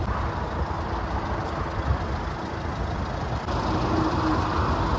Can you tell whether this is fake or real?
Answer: real